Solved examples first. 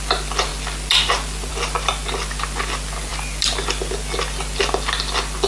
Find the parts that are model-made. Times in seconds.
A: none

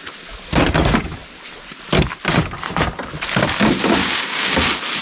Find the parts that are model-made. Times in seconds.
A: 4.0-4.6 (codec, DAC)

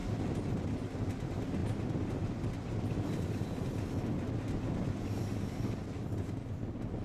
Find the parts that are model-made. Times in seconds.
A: none

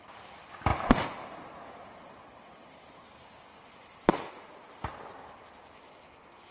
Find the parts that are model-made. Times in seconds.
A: 3.5-4.3 (vocoder, BigVGAN v2)